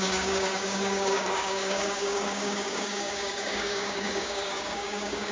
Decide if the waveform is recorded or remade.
remade